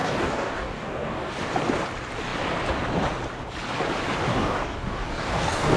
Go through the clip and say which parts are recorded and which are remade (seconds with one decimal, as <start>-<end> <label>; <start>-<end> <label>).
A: 0.0-1.3 remade; 1.3-4.3 recorded; 4.3-5.8 remade